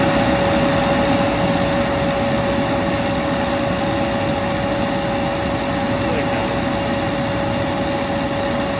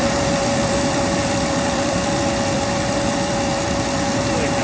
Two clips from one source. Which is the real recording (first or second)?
first